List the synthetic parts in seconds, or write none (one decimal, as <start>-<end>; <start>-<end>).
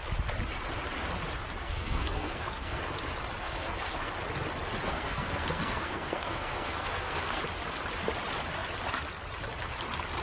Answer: 1.6-2.8; 3.4-4.1; 4.9-7.4